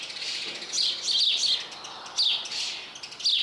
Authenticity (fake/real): real